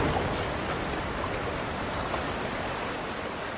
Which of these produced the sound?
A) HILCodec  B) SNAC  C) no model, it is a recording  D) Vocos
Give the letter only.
C